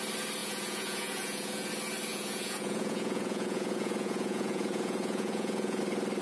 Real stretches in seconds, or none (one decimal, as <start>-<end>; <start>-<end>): 0.0-0.4; 1.7-2.1; 5.8-6.2